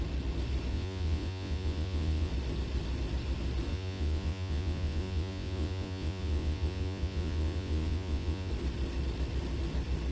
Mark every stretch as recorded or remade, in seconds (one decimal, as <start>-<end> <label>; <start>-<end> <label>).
0.0-0.7 recorded; 0.7-2.3 remade; 2.3-3.7 recorded; 3.7-8.5 remade; 8.5-10.1 recorded